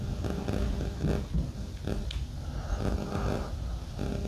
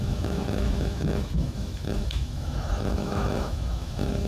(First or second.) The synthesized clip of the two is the second